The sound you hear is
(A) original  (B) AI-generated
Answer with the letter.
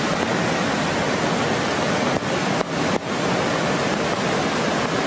A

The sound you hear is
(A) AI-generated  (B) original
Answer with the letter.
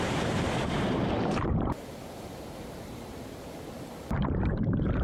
A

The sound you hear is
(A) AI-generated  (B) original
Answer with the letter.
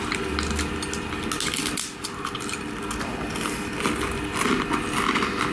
B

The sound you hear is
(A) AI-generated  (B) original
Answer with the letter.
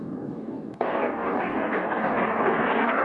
A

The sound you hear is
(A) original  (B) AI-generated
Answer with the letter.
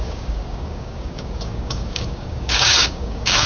B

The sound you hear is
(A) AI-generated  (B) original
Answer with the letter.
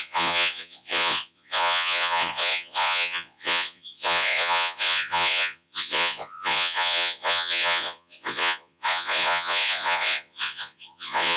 A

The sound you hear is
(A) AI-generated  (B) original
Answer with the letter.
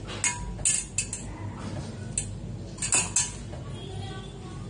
B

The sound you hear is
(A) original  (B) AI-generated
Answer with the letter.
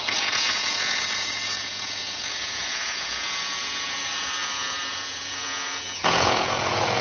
B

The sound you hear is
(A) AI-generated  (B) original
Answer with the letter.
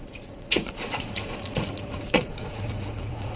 A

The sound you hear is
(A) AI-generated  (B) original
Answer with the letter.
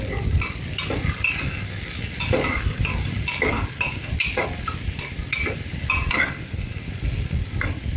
B